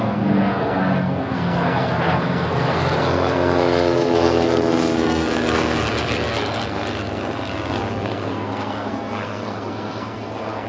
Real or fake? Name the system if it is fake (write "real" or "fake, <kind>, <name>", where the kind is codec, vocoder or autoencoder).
fake, codec, SNAC